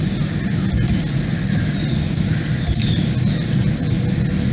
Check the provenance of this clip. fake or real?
real